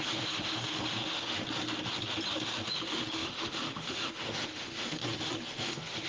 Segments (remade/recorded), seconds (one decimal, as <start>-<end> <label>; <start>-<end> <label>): 0.0-1.4 remade; 1.4-2.7 recorded; 2.7-5.0 remade; 5.0-5.5 recorded; 5.5-6.1 remade